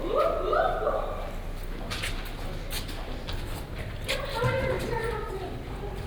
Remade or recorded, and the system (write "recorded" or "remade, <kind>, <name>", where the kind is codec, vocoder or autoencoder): recorded